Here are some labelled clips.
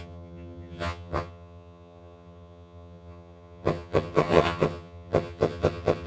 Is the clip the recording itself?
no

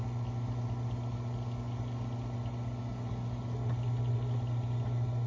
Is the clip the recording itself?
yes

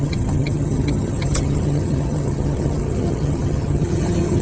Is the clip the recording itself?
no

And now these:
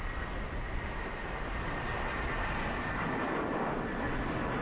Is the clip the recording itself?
yes